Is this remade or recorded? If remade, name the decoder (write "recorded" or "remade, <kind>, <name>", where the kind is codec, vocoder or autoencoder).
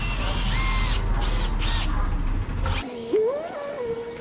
recorded